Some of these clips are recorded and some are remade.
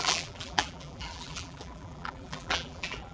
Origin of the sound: remade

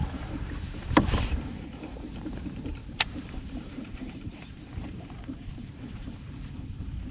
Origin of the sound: remade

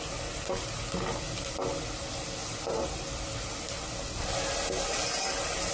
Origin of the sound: recorded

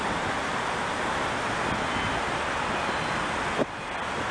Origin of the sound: recorded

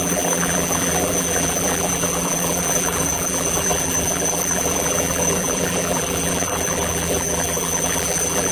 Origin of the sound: remade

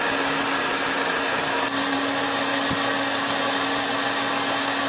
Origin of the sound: recorded